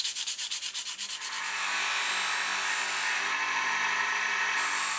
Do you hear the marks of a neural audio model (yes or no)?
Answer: no